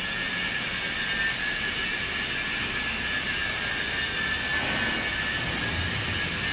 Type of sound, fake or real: real